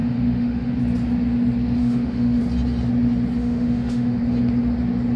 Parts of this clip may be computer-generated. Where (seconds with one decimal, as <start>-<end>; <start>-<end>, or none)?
0.0-0.7; 1.8-2.4; 3.4-4.2